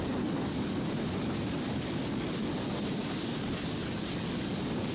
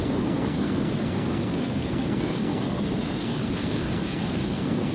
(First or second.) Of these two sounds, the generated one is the second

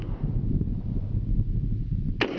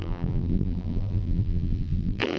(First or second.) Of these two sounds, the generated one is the second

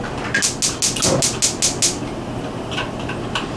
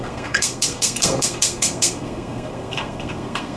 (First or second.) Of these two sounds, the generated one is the second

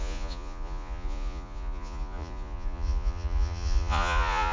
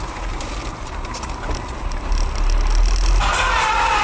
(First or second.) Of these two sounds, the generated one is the first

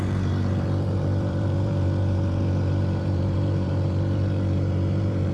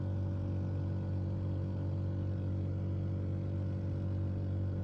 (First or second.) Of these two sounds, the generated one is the first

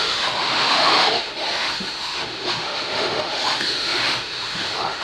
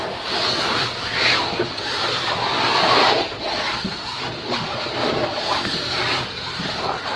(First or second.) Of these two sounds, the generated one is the first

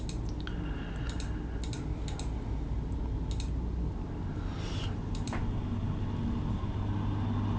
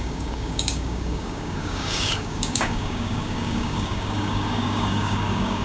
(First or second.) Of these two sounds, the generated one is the second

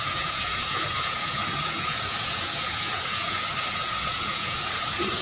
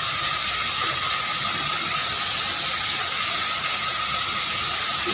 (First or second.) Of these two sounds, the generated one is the first